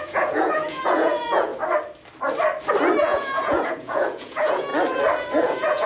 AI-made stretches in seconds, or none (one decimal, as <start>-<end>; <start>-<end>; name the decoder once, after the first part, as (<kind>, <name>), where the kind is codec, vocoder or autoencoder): 0.0-1.5 (vocoder, Vocos); 3.0-4.7; 5.4-5.9